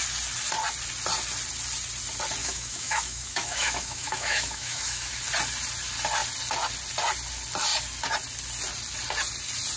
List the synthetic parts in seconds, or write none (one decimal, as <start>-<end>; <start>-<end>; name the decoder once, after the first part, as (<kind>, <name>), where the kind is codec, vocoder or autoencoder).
2.4-5.2 (autoencoder, DAC-VAE)